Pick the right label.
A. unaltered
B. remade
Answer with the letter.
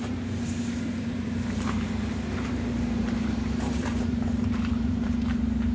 B